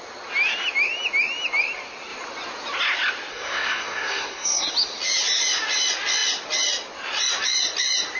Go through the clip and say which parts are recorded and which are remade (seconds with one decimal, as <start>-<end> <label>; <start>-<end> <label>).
0.0-3.3 recorded; 3.3-4.7 remade; 4.7-8.2 recorded